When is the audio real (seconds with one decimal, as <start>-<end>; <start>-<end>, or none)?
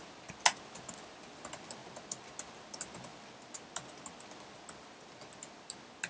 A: 0.0-6.1